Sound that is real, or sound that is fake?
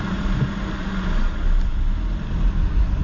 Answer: real